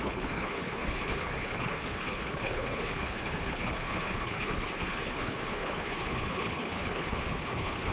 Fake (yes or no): yes